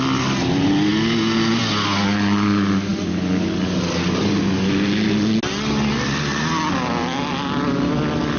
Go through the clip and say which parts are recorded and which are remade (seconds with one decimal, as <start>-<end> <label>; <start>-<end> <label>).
0.0-8.4 recorded